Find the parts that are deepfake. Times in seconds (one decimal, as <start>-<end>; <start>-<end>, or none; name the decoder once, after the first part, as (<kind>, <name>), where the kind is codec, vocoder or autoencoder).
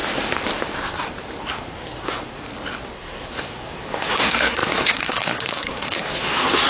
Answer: 1.5-2.4 (codec, SNAC); 2.9-6.7